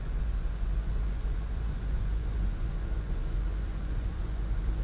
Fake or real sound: fake